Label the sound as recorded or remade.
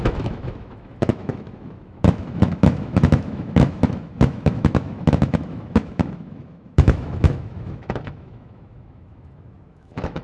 remade